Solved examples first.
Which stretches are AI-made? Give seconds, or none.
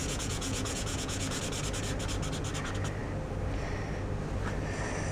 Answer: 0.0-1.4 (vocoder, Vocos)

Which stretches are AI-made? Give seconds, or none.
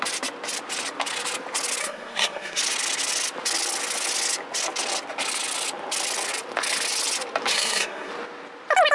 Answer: 1.8-2.6 (codec, SNAC); 7.5-8.1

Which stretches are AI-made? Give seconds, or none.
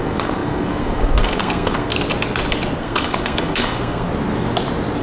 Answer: 0.0-1.9 (codec, SNAC); 2.8-4.1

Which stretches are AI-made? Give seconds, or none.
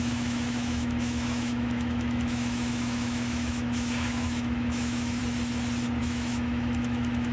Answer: 0.0-5.2 (autoencoder, DAC-VAE); 6.0-7.3